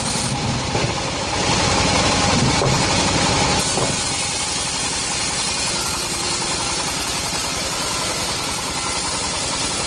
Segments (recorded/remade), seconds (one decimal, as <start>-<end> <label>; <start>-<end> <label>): 0.0-5.9 recorded; 5.9-9.9 remade